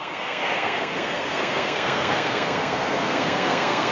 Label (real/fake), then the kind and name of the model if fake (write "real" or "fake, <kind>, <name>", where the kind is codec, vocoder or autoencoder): fake, codec, SNAC